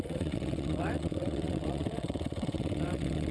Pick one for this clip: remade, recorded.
remade